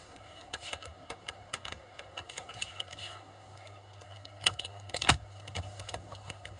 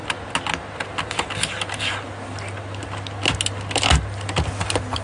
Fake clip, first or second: first